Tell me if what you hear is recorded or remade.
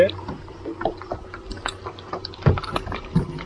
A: recorded